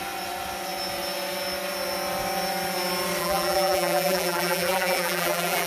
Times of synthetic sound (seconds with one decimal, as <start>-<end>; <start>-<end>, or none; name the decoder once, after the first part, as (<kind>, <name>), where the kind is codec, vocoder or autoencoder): 3.2-5.7 (vocoder, BigVGAN v2)